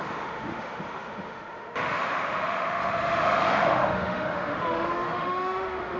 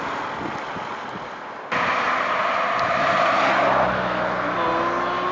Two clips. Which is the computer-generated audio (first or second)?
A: first